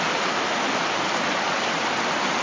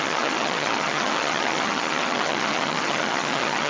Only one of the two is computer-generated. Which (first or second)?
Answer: second